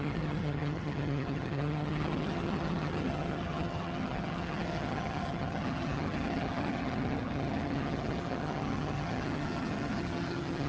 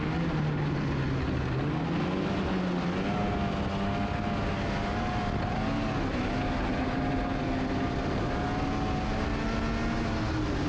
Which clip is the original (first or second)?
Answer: second